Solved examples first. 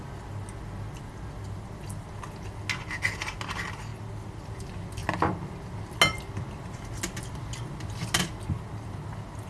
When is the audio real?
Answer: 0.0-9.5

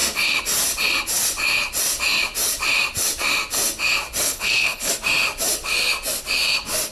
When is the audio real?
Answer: 0.0-4.2; 4.9-6.9

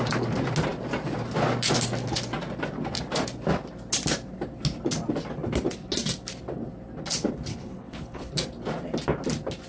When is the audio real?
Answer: 0.0-7.5; 8.3-9.7

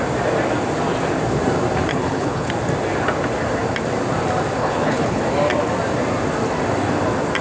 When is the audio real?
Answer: 0.0-1.9; 2.5-4.6; 5.2-7.4